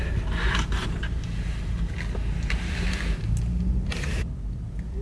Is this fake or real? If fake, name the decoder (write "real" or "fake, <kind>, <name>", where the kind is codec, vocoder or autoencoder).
real